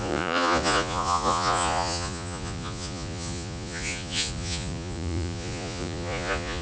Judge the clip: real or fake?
fake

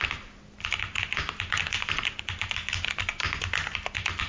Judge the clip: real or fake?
real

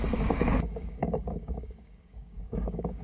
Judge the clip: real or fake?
fake